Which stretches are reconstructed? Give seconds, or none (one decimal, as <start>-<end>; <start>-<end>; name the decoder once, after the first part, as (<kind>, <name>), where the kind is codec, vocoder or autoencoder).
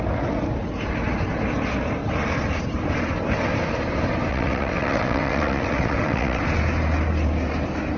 4.3-6.4 (vocoder, WaveNeXt)